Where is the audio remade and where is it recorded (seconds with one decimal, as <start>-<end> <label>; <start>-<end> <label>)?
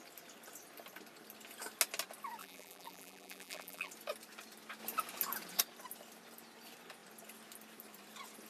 0.0-2.4 recorded; 2.4-3.9 remade; 3.9-8.5 recorded